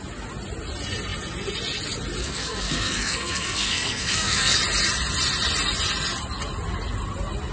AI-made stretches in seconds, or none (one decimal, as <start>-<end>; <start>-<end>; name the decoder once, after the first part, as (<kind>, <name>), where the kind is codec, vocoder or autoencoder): 2.2-4.6 (codec, SNAC)